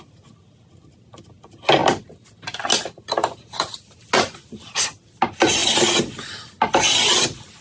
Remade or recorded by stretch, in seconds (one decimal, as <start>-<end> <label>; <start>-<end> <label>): 0.0-7.6 recorded